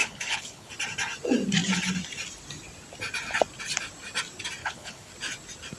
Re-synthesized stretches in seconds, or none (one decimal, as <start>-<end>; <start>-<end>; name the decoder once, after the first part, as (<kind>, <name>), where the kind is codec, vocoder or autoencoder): 0.0-0.7 (codec, HILCodec); 4.6-5.1